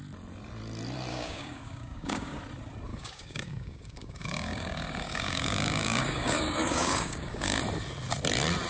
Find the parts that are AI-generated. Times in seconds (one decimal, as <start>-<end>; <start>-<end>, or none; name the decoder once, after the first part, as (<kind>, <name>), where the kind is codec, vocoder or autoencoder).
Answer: 1.1-2.4 (codec, DAC); 2.9-7.6